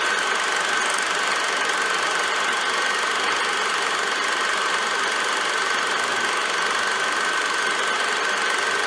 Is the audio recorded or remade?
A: recorded